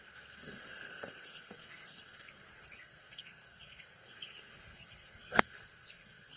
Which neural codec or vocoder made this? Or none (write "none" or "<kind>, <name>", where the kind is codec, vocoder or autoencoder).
codec, SNAC